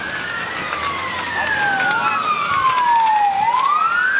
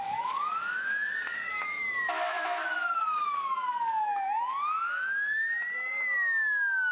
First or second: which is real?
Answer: first